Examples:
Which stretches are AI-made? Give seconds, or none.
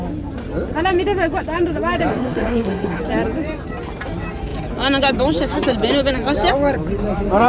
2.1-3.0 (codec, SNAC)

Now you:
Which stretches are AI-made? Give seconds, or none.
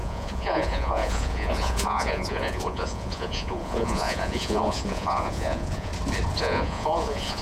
0.0-5.9 (vocoder, Vocos); 6.4-7.4